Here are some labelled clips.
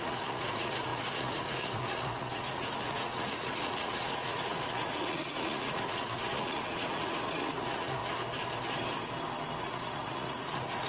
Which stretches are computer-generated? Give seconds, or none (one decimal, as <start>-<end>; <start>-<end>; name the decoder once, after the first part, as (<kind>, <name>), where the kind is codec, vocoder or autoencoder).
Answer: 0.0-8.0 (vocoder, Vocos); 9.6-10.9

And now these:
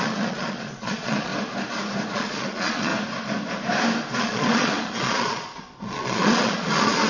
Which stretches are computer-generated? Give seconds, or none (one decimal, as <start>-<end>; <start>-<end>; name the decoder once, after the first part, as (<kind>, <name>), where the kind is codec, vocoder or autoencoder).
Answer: 0.0-1.3 (vocoder, Vocos); 2.1-2.9; 4.2-7.1

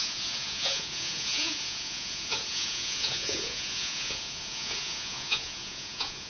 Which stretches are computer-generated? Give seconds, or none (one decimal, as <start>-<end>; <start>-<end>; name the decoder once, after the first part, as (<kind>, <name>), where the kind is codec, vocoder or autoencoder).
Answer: 0.0-6.3 (vocoder, Vocos)

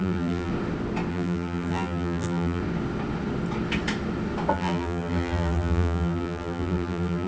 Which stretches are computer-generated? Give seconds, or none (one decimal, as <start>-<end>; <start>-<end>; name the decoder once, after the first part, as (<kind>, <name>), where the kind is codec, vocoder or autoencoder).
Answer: 0.0-0.5 (vocoder, BigVGAN v2); 1.1-2.6; 4.5-7.3